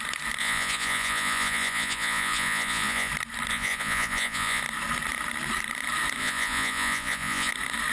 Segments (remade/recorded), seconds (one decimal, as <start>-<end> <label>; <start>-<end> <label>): 0.0-0.4 recorded; 0.4-3.1 remade; 3.1-3.5 recorded; 3.5-4.6 remade; 4.6-6.2 recorded; 6.2-7.5 remade; 7.5-7.9 recorded